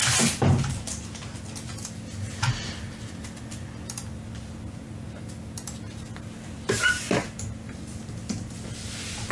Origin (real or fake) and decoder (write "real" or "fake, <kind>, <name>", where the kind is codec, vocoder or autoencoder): real